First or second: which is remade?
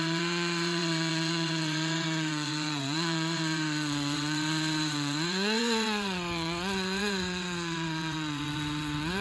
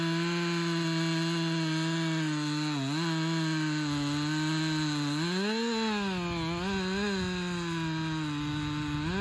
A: first